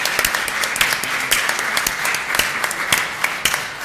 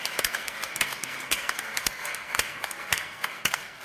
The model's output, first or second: second